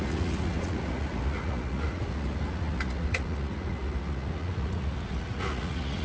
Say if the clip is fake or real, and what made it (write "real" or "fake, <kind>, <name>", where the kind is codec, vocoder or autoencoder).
fake, vocoder, Vocos